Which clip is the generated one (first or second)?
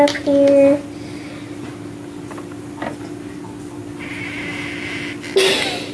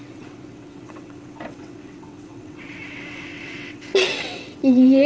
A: second